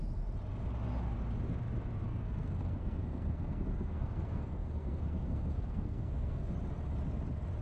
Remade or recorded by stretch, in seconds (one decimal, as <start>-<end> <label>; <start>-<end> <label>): 0.0-2.1 recorded; 2.1-6.5 remade; 6.5-7.6 recorded